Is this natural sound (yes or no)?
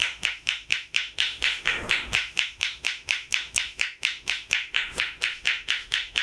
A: no